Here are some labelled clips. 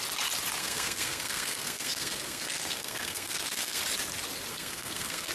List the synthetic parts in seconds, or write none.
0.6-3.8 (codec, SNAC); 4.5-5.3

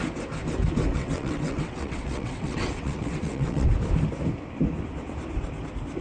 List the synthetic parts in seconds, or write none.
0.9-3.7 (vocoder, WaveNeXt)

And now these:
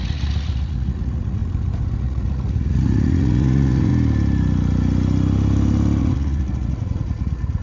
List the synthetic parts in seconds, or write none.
0.0-1.4 (vocoder, Vocos); 2.0-3.9; 6.0-7.6

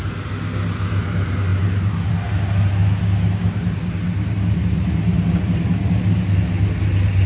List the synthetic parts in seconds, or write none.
none